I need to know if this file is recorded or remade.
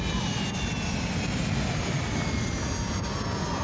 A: recorded